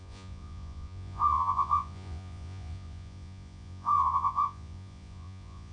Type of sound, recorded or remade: remade